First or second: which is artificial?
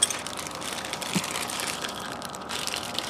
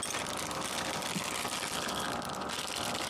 first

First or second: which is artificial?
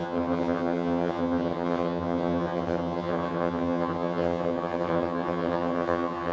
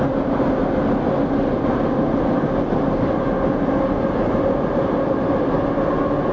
first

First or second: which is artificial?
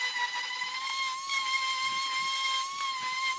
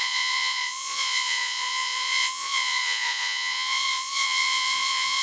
second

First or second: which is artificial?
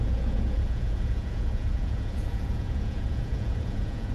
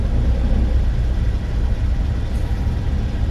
first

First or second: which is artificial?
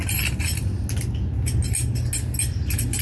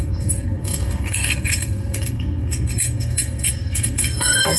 second